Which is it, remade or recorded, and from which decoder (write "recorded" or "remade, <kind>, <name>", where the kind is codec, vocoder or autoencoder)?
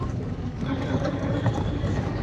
remade, codec, DAC